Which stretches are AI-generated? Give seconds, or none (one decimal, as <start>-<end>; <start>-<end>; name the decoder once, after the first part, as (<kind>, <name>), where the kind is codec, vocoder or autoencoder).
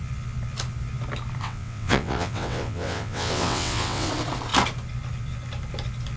1.4-4.1 (vocoder, WaveNeXt)